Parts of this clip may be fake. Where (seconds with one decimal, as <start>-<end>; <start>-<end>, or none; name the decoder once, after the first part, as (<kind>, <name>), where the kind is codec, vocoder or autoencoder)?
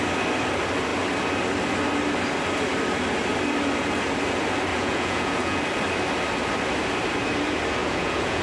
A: 4.7-5.6 (vocoder, Vocos); 7.8-8.4